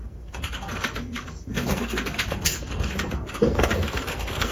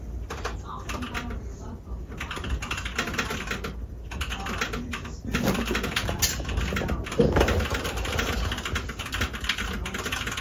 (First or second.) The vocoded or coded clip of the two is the first